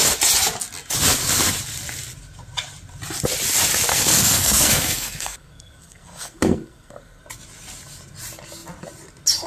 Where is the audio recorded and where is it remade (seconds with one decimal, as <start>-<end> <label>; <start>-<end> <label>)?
0.0-3.9 recorded; 3.9-7.2 remade; 7.2-9.5 recorded